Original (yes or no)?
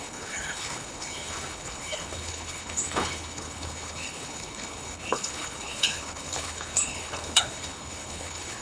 no